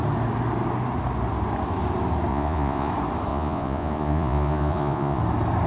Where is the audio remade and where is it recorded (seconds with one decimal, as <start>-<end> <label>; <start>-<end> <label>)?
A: 0.0-2.3 recorded; 2.3-2.9 remade; 2.9-3.3 recorded; 3.3-5.2 remade; 5.2-5.7 recorded